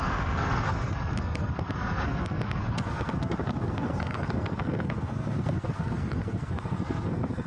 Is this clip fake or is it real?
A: fake